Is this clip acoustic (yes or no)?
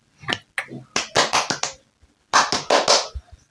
yes